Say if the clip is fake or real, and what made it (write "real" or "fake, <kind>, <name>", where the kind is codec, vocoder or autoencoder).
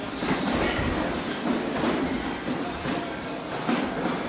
real